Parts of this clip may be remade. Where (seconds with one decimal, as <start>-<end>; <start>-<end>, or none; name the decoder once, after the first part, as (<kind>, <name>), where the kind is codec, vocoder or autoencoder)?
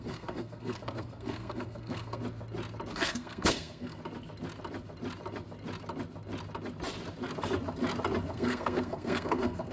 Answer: 0.0-2.2 (codec, SNAC); 2.9-4.0; 8.3-9.7